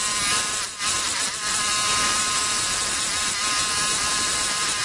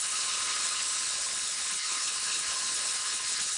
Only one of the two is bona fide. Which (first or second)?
first